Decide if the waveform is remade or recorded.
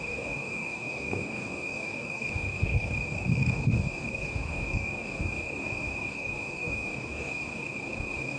remade